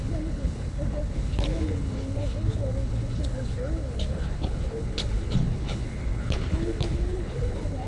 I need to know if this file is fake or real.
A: fake